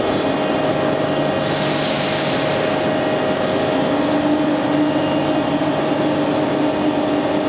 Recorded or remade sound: recorded